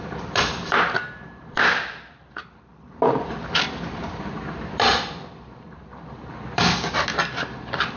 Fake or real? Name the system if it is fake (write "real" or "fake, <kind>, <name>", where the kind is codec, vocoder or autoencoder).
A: fake, vocoder, BigVGAN v2